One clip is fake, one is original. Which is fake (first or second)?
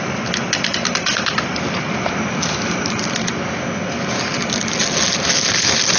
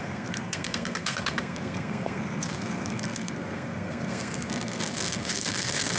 second